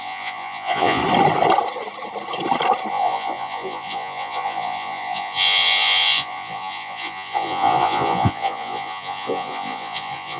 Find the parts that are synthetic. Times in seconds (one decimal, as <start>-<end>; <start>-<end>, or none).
0.0-1.0; 2.9-10.4